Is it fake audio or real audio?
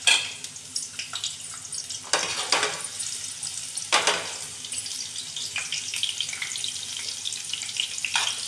real